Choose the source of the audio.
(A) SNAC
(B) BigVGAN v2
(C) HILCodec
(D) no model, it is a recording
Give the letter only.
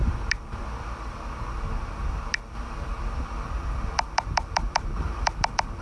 B